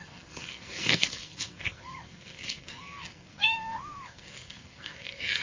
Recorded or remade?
remade